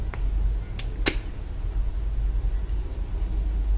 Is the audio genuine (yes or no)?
yes